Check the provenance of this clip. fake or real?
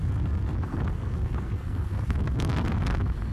fake